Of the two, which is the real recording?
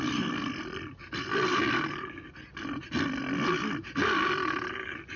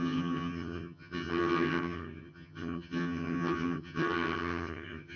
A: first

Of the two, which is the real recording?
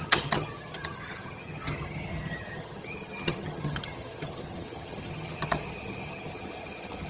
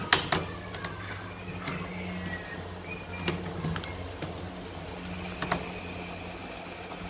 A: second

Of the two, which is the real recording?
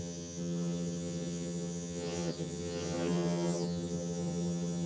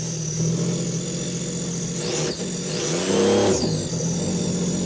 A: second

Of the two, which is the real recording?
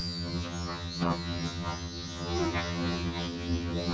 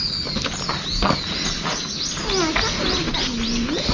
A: second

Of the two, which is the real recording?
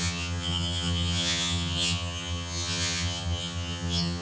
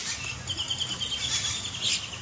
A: second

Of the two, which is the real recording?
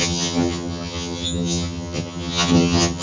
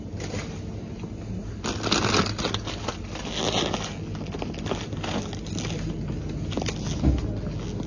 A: second